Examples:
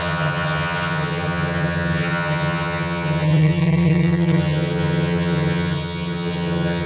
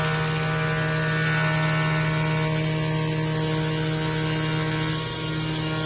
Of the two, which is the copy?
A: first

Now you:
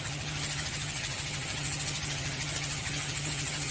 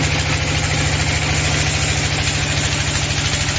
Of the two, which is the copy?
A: first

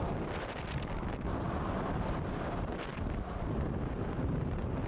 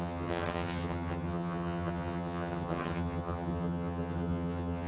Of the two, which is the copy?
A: second